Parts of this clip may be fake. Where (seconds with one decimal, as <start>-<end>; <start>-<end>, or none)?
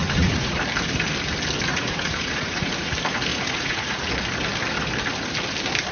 0.0-0.6; 1.7-2.9; 3.3-4.1